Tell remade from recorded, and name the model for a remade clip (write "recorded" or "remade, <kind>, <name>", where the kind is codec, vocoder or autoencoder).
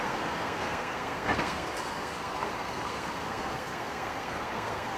remade, codec, SNAC